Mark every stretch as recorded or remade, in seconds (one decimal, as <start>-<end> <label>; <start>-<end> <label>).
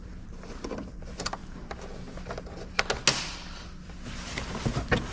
0.0-5.1 recorded